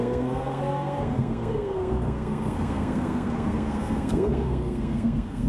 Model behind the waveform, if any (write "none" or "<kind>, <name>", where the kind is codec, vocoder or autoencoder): codec, SNAC